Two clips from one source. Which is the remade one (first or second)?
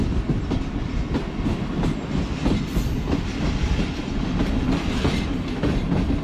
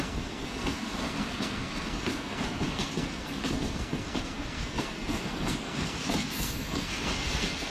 second